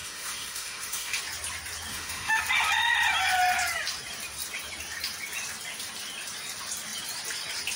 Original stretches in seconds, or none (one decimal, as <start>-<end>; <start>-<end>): 1.2-1.9; 2.4-7.8